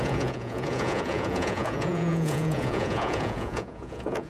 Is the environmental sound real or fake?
fake